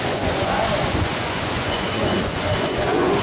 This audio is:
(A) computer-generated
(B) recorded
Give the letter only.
A